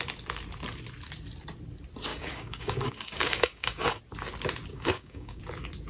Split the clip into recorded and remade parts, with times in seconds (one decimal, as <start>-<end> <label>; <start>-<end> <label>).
0.0-2.1 recorded; 2.1-4.0 remade; 4.0-4.7 recorded; 4.7-5.4 remade; 5.4-5.9 recorded